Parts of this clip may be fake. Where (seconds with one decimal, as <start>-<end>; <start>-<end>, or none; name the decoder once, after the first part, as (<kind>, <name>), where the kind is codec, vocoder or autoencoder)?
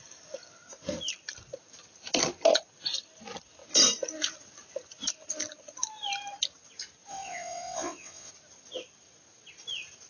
7.1-8.3 (vocoder, WaveNeXt)